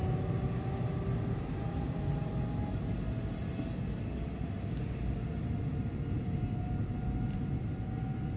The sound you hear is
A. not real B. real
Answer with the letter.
B